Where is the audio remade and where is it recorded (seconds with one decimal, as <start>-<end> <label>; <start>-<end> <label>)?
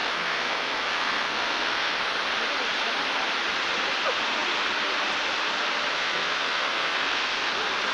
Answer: 0.0-2.0 remade; 2.0-5.9 recorded; 5.9-7.5 remade; 7.5-7.9 recorded